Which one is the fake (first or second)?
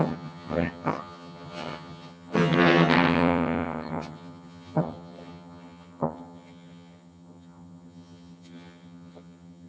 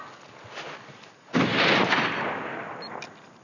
first